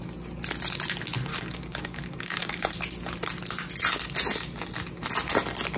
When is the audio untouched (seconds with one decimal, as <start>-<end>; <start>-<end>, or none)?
0.0-1.3; 2.6-5.8